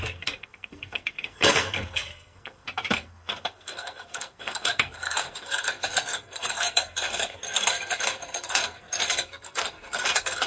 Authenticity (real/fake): fake